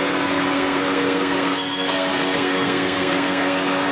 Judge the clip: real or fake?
fake